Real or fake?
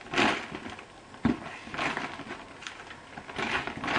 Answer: real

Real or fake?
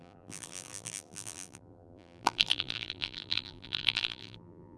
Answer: fake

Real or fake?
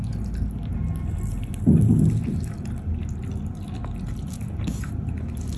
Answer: real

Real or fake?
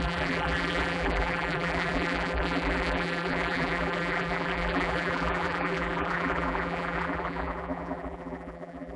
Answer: fake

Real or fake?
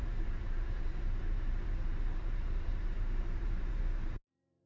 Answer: fake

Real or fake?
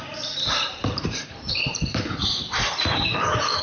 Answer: fake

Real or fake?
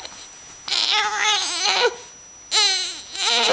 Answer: real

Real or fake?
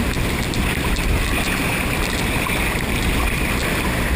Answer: fake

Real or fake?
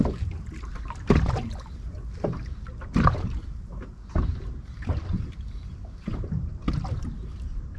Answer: real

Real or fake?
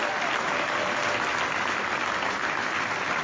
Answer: real